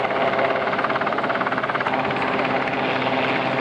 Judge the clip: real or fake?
real